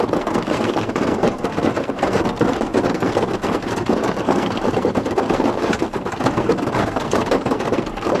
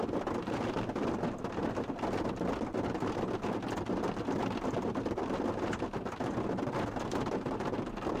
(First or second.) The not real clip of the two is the first